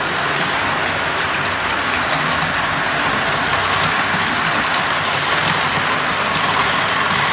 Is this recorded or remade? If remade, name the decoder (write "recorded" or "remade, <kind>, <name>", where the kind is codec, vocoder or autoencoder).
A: recorded